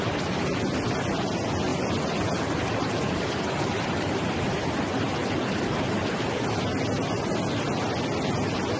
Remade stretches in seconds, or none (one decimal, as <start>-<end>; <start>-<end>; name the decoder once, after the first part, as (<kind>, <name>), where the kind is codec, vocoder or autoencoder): none